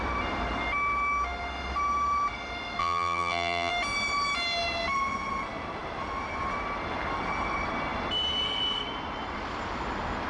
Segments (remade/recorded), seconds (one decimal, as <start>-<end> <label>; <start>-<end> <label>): 0.0-2.8 recorded; 2.8-3.7 remade; 3.7-10.3 recorded